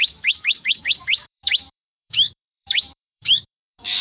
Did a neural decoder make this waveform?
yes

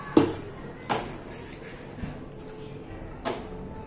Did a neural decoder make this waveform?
no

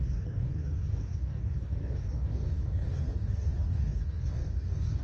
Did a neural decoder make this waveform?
yes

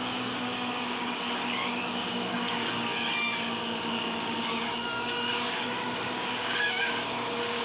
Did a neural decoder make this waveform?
yes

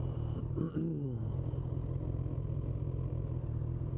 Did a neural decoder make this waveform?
no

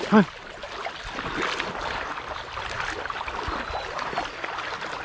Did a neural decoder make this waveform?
no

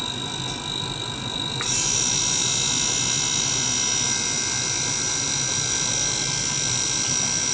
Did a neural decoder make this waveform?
no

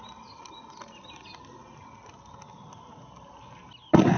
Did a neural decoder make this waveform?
no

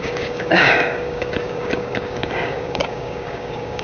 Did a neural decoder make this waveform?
yes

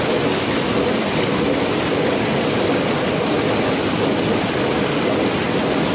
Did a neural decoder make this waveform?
no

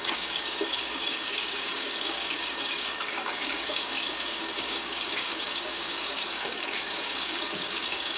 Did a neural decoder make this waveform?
yes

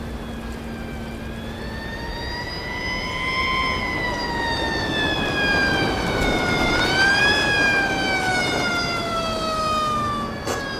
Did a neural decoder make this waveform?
no